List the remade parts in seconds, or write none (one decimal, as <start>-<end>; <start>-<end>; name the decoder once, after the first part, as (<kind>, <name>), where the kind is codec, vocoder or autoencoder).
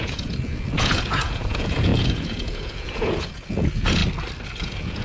0.0-4.0 (vocoder, Vocos); 4.6-5.0